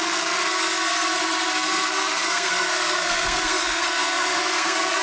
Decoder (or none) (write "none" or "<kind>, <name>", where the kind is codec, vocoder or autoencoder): codec, SNAC